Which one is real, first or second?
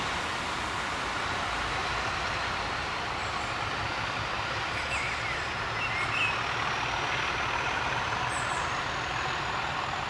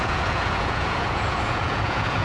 first